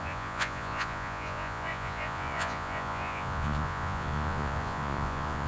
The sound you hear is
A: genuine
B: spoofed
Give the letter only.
B